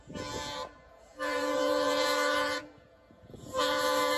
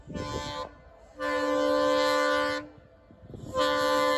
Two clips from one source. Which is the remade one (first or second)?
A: first